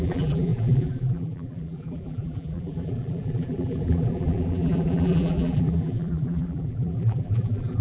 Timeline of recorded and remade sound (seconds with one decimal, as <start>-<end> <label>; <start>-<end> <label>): 0.0-7.8 remade